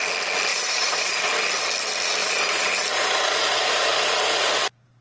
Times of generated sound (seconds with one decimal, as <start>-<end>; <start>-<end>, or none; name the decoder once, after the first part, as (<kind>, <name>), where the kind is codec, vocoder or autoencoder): 0.5-1.2 (vocoder, BigVGAN v2); 2.2-2.7